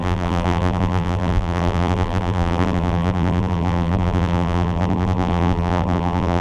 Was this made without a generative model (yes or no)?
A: no